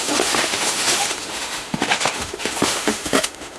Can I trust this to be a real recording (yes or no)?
no